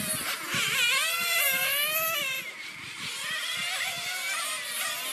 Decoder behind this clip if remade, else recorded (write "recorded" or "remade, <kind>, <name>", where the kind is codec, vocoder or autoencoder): recorded